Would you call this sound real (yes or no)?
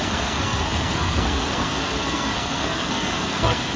no